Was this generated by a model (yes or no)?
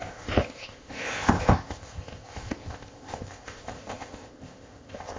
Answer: yes